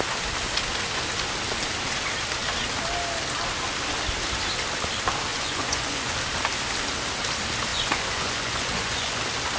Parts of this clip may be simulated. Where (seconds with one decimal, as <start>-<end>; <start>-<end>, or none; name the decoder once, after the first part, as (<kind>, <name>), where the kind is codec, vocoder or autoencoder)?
5.3-6.1 (vocoder, Vocos); 7.7-9.2